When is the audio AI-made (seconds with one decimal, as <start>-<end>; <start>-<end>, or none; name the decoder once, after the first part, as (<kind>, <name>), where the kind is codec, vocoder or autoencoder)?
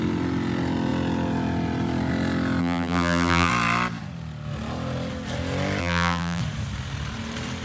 2.6-3.5 (vocoder, BigVGAN v2); 5.8-6.4